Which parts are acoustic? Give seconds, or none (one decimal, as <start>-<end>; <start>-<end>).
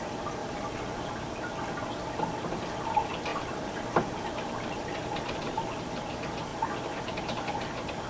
0.0-0.4; 1.1-3.3; 5.8-8.1